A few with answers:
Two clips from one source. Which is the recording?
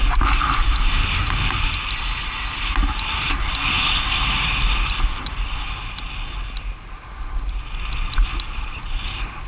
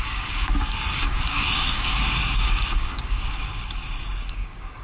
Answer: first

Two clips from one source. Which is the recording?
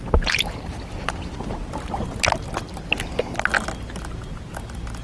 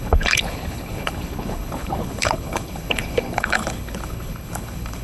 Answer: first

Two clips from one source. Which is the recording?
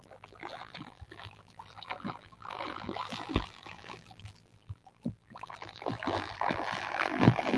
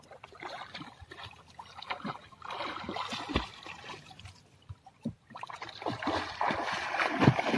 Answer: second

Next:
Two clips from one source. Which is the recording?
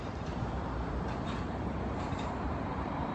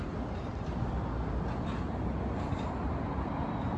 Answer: second